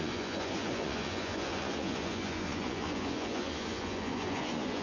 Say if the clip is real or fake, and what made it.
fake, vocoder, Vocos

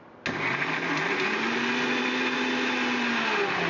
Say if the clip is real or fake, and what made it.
real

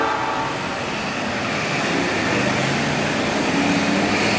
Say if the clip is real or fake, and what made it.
real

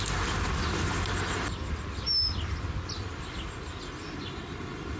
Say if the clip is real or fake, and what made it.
real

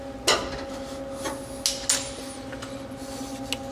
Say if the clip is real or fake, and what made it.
real